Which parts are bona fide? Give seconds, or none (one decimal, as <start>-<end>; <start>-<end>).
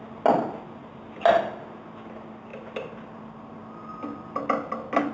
0.0-5.1